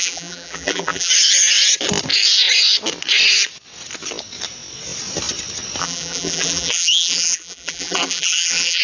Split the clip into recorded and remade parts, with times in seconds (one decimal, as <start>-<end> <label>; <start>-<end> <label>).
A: 0.0-1.1 remade; 1.1-5.8 recorded; 5.8-8.8 remade

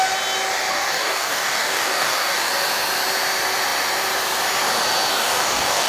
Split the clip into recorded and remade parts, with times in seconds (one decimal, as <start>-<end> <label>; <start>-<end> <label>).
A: 0.0-0.7 recorded; 0.7-2.5 remade; 2.5-5.1 recorded; 5.1-5.9 remade

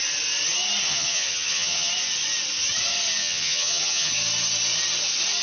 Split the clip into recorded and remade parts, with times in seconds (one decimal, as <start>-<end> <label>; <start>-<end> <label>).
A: 0.0-0.8 recorded; 0.8-1.9 remade; 1.9-3.2 recorded; 3.2-4.1 remade; 4.1-5.4 recorded